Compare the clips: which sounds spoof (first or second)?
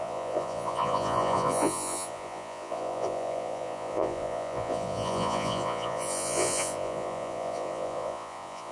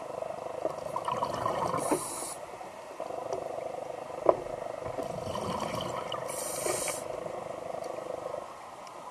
first